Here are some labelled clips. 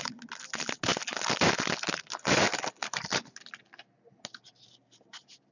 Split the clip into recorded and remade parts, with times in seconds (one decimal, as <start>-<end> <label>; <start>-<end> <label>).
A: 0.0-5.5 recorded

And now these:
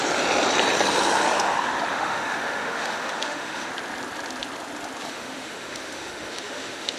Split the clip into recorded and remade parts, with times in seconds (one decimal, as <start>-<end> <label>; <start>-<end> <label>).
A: 0.0-1.9 recorded; 1.9-3.7 remade; 3.7-5.1 recorded; 5.1-7.0 remade

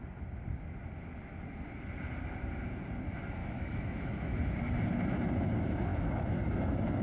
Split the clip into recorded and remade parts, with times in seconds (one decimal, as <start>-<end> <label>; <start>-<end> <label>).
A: 0.0-3.4 recorded; 3.4-4.3 remade; 4.3-5.9 recorded; 5.9-7.0 remade

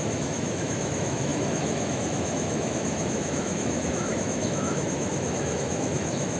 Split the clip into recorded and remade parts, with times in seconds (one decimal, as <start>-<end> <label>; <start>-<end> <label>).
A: 0.0-6.4 remade

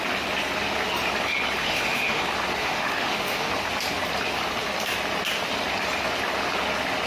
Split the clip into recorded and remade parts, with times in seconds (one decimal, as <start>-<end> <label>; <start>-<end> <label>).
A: 0.0-1.6 recorded; 1.6-2.2 remade; 2.2-2.6 recorded; 2.6-3.5 remade; 3.5-7.1 recorded